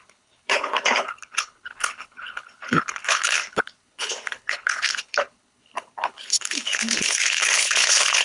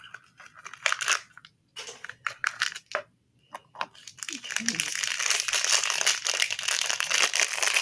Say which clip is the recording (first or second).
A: second